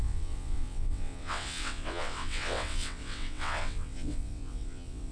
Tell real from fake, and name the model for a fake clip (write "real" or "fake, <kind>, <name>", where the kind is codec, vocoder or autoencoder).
fake, vocoder, WaveNeXt